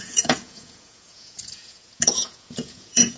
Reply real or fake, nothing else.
fake